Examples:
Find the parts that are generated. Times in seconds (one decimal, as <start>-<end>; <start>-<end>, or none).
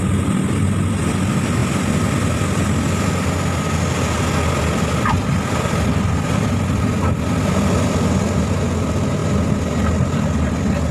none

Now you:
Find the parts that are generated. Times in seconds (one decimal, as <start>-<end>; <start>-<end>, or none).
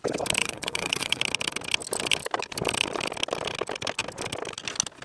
0.4-1.2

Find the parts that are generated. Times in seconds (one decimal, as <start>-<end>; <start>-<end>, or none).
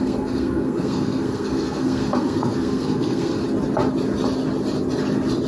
0.0-3.4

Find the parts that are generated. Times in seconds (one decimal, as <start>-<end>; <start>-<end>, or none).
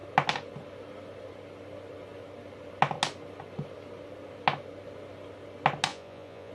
5.9-6.5